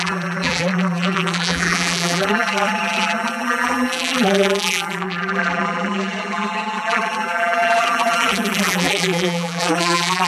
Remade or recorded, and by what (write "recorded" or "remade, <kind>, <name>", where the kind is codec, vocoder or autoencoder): remade, vocoder, BigVGAN v2